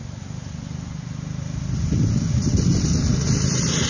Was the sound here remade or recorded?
recorded